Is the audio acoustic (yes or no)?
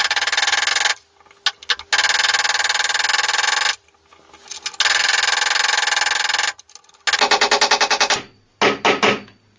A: yes